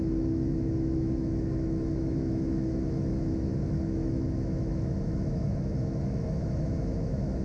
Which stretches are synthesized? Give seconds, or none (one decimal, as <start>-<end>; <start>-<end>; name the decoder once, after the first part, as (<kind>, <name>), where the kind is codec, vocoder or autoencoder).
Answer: 0.0-7.4 (autoencoder, DAC-VAE)